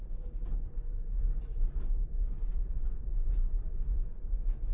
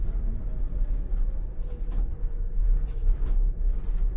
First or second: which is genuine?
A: second